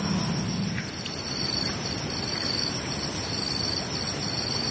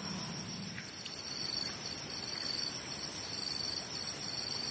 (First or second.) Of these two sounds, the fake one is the second